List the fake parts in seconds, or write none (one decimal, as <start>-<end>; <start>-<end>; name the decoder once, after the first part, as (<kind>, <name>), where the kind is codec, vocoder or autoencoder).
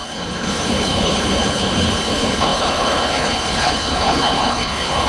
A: 0.0-5.1 (codec, HILCodec)